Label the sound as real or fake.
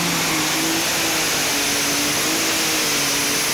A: real